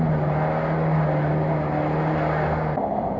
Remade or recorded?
recorded